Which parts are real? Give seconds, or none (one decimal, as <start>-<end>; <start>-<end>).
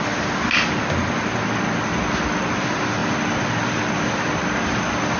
0.0-5.2